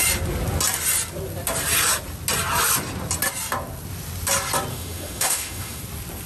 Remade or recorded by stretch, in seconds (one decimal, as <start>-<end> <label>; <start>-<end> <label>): 0.0-4.7 recorded; 4.7-5.8 remade; 5.8-6.3 recorded